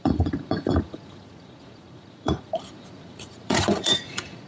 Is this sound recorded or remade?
remade